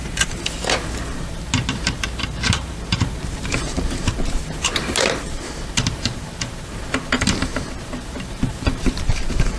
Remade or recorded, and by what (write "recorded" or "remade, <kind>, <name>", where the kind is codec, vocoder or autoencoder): remade, vocoder, BigVGAN v2